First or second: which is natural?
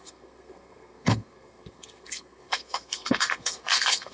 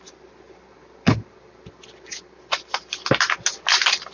second